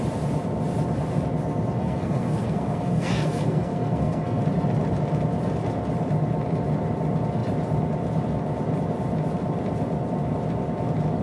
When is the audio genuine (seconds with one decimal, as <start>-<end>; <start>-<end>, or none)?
0.0-1.8; 4.4-11.2